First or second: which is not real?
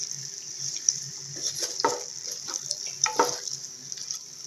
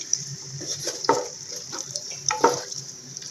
second